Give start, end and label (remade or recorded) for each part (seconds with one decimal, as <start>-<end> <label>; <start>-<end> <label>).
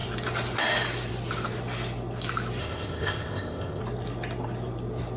0.0-2.6 recorded; 2.6-3.8 remade; 3.8-5.2 recorded